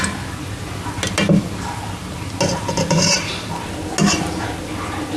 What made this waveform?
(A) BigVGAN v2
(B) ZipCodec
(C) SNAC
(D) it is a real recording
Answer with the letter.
D